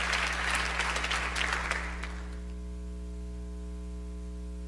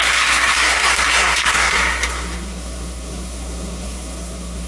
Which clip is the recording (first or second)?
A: first